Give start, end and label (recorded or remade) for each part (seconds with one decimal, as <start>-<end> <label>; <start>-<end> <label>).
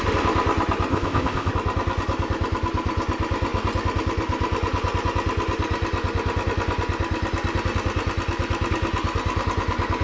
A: 0.0-0.9 recorded; 0.9-1.5 remade; 1.5-10.0 recorded